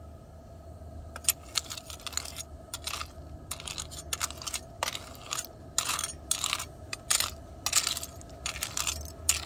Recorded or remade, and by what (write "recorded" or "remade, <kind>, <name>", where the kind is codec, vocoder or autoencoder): recorded